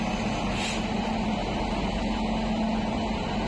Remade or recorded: recorded